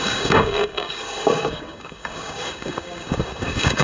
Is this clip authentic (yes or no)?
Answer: no